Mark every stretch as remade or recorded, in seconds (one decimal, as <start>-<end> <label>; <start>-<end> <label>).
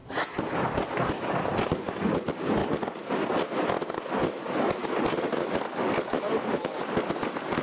0.0-1.1 remade; 1.1-2.6 recorded; 2.6-3.3 remade; 3.3-7.6 recorded